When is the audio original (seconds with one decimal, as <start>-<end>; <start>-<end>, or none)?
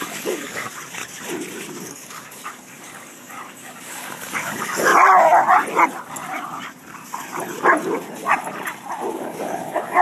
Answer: 1.0-1.8; 4.9-9.1